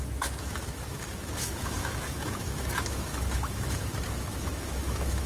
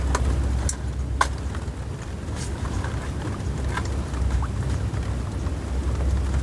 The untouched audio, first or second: second